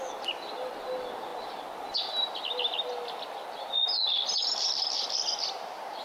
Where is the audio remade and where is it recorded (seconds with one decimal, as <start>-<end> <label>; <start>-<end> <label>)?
0.0-6.0 recorded